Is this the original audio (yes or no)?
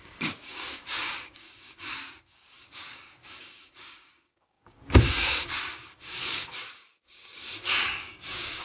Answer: no